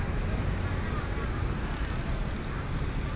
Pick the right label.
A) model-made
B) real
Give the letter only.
B